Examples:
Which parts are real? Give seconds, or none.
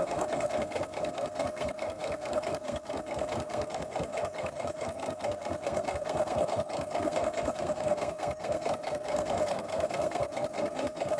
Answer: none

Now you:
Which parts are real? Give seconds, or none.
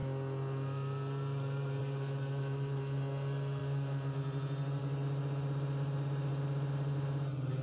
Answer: 0.0-7.6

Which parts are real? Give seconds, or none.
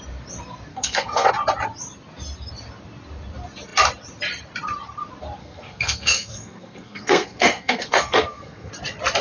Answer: 0.0-0.7; 1.3-5.4; 8.7-9.2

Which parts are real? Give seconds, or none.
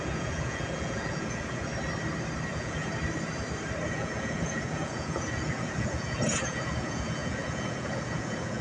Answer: 1.7-2.5; 2.9-3.9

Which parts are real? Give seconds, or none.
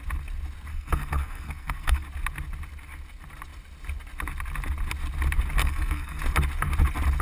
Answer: 0.0-0.7; 2.0-5.6; 6.2-7.2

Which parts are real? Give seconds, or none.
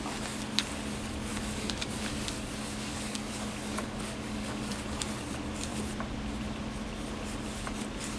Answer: 0.0-1.3; 4.7-8.2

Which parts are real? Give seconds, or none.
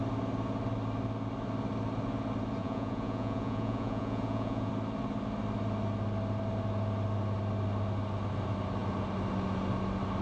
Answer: 0.0-2.6; 4.7-10.2